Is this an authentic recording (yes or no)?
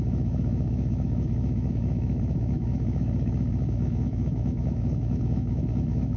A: no